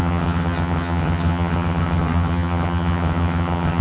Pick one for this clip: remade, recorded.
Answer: remade